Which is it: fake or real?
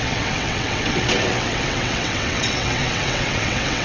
fake